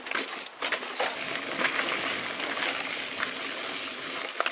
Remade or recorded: recorded